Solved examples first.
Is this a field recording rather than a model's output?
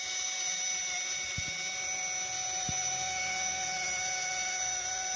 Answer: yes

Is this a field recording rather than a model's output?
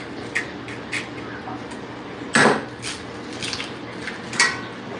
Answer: yes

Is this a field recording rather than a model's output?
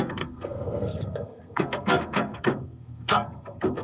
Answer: no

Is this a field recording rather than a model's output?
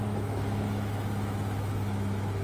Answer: no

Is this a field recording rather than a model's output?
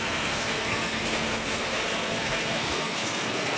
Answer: no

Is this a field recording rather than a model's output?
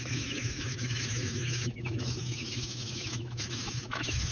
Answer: no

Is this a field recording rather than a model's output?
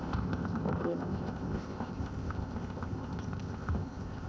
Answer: no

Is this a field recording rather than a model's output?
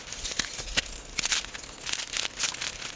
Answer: yes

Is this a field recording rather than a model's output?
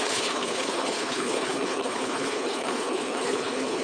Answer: no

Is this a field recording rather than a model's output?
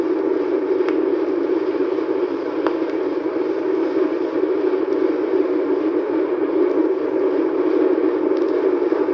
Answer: yes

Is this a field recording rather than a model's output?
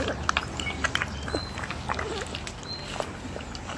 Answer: yes